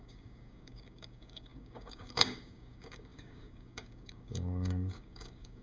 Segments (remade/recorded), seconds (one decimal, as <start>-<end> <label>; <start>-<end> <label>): 0.0-5.6 remade